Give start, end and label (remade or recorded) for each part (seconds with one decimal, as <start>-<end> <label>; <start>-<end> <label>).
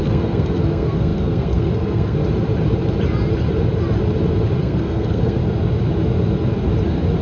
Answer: 0.0-2.2 remade; 2.2-4.6 recorded; 4.6-5.4 remade; 5.4-7.2 recorded